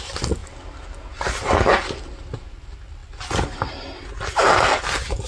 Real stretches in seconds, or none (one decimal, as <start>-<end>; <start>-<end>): 0.0-5.3